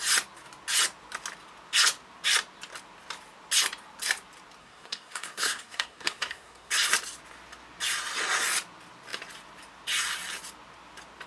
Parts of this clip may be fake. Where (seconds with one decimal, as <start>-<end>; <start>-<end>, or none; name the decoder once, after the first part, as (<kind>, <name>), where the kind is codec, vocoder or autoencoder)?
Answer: 4.6-6.7 (codec, SNAC)